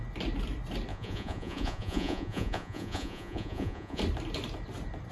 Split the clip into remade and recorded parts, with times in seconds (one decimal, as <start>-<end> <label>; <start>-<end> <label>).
0.0-0.9 recorded; 0.9-4.0 remade; 4.0-5.1 recorded